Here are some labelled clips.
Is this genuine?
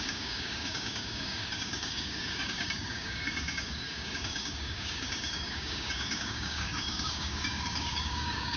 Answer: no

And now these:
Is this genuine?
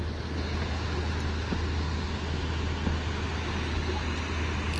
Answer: yes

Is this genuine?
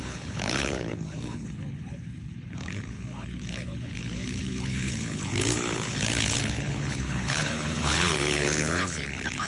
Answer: no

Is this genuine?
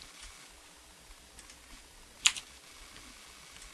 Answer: yes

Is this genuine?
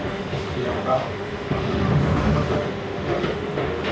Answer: no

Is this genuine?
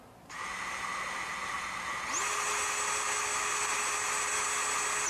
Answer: yes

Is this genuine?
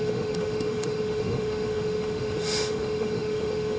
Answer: no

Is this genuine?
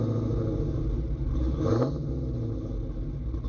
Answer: yes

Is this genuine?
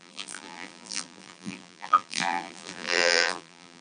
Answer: no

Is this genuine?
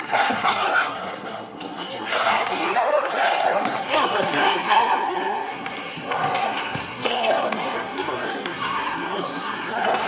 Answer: no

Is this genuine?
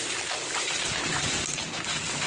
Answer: yes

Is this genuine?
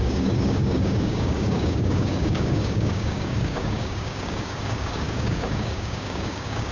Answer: no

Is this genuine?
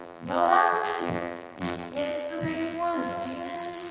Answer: no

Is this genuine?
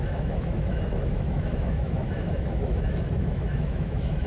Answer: no